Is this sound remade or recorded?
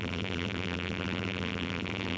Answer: remade